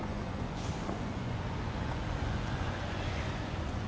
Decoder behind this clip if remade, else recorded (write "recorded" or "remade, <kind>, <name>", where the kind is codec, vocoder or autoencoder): remade, vocoder, Vocos